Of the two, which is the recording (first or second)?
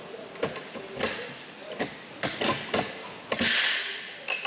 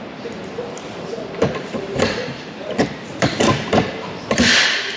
first